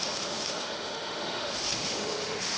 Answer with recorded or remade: remade